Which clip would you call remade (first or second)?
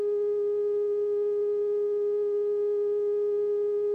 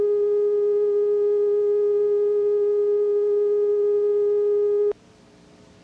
second